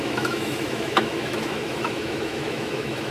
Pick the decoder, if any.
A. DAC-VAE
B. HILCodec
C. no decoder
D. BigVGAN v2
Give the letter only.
A